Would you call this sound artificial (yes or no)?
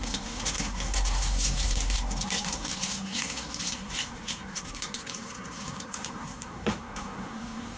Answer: yes